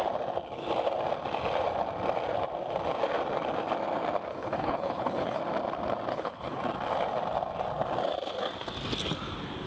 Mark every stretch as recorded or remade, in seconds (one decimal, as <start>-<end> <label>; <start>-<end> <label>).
0.0-4.3 recorded; 4.3-5.4 remade; 5.4-6.1 recorded; 6.1-6.6 remade; 6.6-9.7 recorded